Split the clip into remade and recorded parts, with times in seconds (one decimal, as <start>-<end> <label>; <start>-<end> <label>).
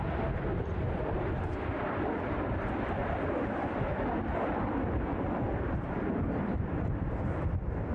0.0-7.9 recorded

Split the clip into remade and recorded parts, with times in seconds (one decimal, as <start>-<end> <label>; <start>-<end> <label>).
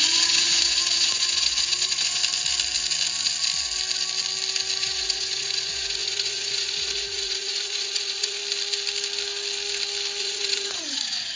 0.0-2.2 remade; 2.2-4.8 recorded; 4.8-8.4 remade; 8.4-10.2 recorded; 10.2-11.4 remade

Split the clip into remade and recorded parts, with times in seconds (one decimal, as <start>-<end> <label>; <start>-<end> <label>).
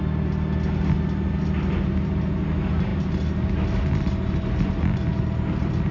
0.0-5.9 recorded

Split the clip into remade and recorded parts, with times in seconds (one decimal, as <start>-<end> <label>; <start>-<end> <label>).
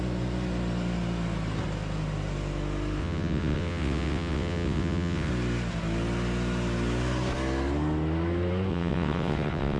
0.0-3.0 recorded; 3.0-5.3 remade; 5.3-8.7 recorded; 8.7-9.8 remade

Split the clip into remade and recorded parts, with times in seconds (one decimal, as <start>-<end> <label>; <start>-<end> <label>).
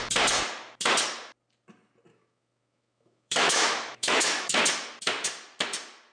0.0-2.1 recorded; 2.1-4.6 remade; 4.6-6.1 recorded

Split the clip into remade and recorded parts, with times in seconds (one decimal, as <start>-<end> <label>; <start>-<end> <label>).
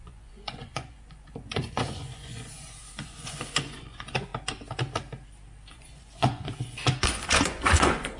0.0-4.3 remade; 4.3-5.7 recorded; 5.7-8.2 remade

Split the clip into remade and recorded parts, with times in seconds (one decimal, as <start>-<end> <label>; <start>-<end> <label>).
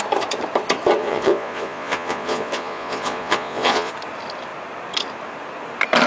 0.0-1.0 recorded; 1.0-3.9 remade; 3.9-6.1 recorded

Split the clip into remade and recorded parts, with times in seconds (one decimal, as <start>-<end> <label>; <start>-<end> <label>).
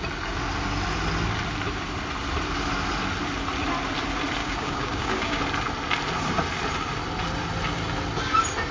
0.0-4.4 recorded; 4.4-5.4 remade; 5.4-8.7 recorded